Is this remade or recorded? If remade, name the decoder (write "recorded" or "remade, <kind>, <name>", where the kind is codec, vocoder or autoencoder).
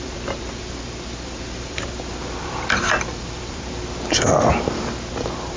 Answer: remade, vocoder, BigVGAN v2